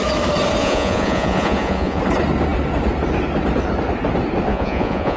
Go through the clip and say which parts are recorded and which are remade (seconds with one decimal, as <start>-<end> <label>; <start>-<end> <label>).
0.0-0.6 recorded; 0.6-2.0 remade; 2.0-4.5 recorded; 4.5-5.2 remade